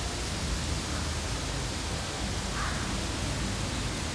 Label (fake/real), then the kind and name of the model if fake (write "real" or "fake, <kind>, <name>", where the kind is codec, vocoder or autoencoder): real